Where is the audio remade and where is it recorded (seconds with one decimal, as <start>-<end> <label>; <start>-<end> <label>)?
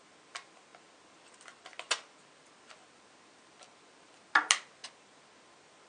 0.0-5.9 recorded